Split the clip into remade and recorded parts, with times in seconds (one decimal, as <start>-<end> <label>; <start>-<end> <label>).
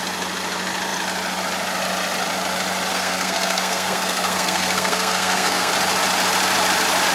0.0-2.9 recorded; 2.9-5.7 remade; 5.7-7.1 recorded